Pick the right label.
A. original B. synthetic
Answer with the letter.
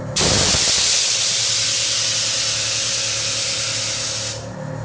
A